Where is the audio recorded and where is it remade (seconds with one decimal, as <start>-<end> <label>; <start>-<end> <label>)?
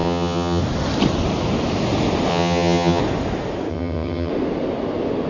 0.0-0.6 remade; 0.6-2.3 recorded; 2.3-3.0 remade; 3.0-3.7 recorded; 3.7-4.3 remade; 4.3-5.3 recorded